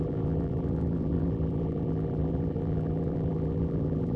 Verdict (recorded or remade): remade